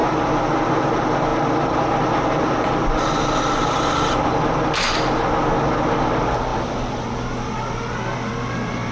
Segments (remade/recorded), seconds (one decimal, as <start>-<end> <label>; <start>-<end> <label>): 0.0-8.9 recorded